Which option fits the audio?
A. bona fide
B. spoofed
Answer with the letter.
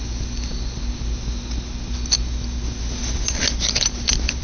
A